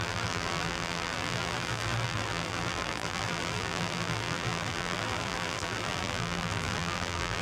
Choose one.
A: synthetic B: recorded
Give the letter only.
A